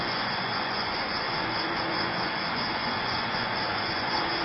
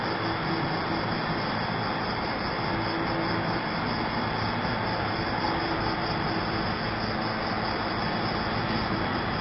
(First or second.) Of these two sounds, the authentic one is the second